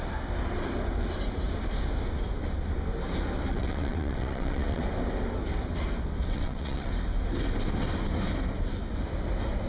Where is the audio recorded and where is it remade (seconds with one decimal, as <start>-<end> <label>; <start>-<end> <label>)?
0.0-3.5 recorded; 3.5-4.8 remade; 4.8-6.2 recorded; 6.2-6.9 remade; 6.9-9.7 recorded